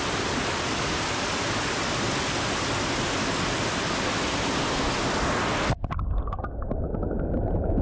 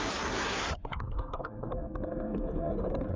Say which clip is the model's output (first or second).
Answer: second